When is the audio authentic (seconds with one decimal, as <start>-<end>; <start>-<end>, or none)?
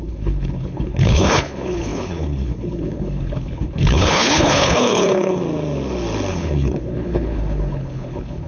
5.4-6.3